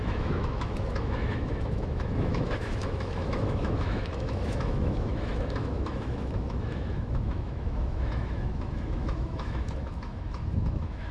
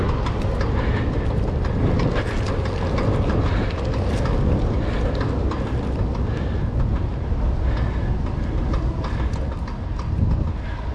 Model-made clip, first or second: first